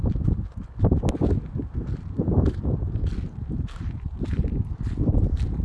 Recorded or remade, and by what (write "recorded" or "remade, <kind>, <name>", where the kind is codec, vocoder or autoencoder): remade, vocoder, BigVGAN v2